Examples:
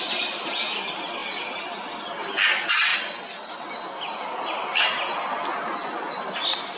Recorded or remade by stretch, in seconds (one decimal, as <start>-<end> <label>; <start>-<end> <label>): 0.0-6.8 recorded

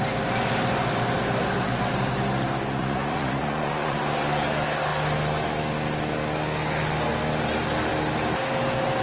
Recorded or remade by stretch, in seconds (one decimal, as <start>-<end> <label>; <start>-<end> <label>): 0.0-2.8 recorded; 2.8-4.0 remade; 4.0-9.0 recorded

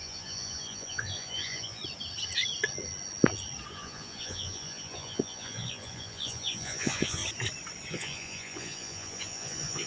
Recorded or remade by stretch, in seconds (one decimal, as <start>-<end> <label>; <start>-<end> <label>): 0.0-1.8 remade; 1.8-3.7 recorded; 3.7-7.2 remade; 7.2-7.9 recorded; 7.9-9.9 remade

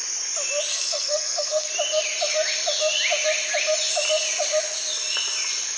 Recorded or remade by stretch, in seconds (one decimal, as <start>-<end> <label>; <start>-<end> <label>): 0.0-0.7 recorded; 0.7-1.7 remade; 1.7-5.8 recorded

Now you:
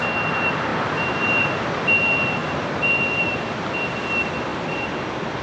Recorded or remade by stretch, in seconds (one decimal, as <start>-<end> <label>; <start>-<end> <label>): 0.0-0.7 recorded; 0.7-1.8 remade; 1.8-2.4 recorded; 2.4-3.5 remade; 3.5-5.4 recorded